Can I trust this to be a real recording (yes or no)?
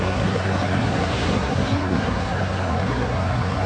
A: no